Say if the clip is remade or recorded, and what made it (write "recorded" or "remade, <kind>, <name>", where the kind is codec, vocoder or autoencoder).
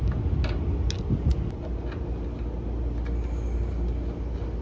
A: recorded